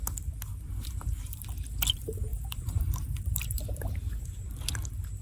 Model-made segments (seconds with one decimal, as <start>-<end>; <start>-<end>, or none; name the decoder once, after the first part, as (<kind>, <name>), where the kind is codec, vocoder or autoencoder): 0.5-1.4 (vocoder, BigVGAN v2); 2.3-4.2